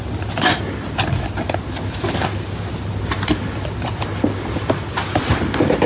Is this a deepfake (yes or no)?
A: no